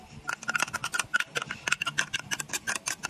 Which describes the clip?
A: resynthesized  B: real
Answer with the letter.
B